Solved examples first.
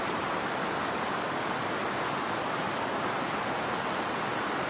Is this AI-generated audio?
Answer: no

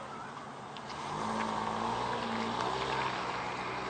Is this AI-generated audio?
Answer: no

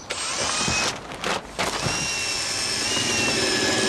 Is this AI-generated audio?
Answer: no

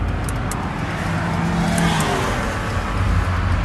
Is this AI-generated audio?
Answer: no